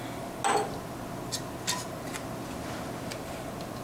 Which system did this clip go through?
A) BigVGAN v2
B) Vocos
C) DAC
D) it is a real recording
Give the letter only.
D